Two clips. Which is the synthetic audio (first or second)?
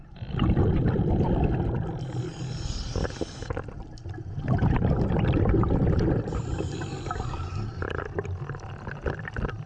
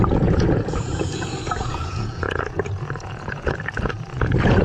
second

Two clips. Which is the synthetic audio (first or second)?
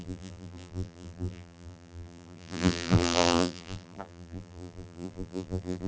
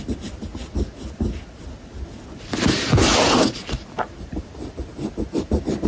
first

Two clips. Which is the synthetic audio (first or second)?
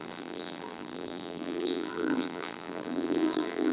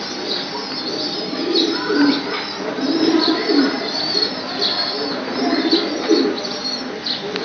first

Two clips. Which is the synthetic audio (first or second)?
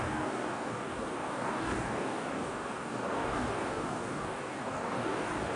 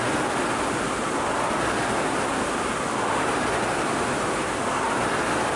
first